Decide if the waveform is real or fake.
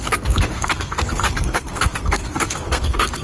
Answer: fake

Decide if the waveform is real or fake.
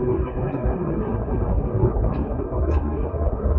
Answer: fake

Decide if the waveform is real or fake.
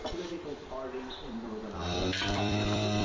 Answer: fake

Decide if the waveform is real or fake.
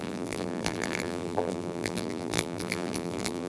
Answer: fake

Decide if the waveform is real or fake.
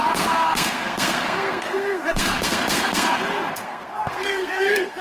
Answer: fake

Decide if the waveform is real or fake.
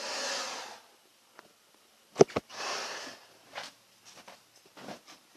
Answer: real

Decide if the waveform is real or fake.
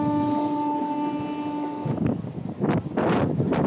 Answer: real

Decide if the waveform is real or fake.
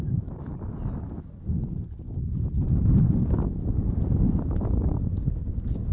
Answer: real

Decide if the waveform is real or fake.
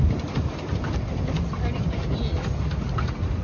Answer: fake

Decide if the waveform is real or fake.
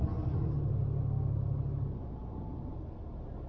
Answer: real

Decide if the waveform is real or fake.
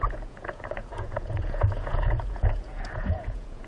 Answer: fake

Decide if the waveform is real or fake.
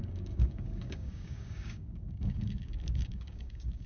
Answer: fake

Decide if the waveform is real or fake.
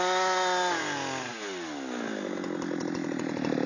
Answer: real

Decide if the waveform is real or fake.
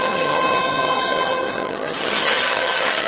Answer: fake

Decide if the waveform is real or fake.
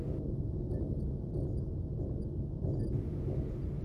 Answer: real